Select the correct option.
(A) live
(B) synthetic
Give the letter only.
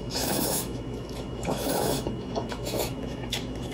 B